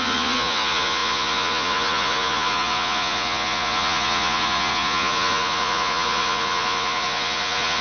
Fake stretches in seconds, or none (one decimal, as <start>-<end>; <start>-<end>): 0.0-7.8